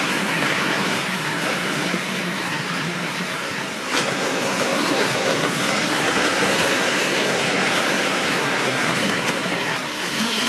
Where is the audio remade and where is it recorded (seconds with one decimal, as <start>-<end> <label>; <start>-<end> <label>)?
0.0-10.5 remade